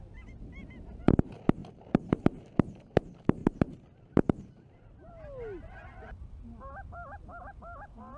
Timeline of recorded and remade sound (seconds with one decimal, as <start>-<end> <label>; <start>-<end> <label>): 0.0-1.6 recorded; 1.6-2.2 remade; 2.2-3.4 recorded; 3.4-5.1 remade; 5.1-8.2 recorded